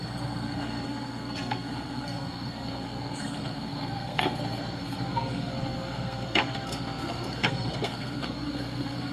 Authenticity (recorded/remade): remade